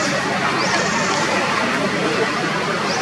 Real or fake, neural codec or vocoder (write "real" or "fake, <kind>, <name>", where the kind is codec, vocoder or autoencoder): real